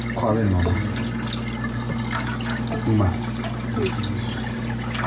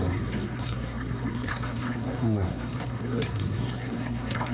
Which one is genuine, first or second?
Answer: first